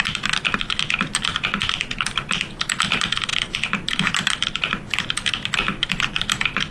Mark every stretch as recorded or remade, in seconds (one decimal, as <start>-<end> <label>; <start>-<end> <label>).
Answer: 0.0-6.7 recorded